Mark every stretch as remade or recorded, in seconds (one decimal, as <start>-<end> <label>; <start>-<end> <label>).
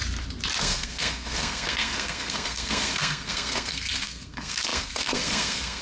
0.0-0.6 recorded; 0.6-5.8 remade